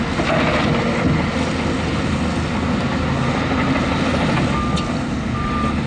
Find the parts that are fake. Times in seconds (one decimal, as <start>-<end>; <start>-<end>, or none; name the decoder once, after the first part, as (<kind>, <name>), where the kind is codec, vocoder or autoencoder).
none